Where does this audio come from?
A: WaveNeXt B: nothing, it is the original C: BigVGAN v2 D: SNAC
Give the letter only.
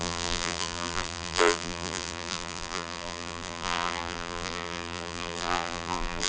C